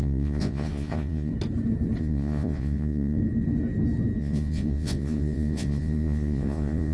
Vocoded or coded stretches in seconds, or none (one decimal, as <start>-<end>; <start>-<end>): 0.0-1.3; 2.0-3.2; 4.2-6.9